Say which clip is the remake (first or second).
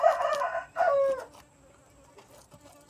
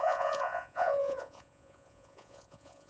second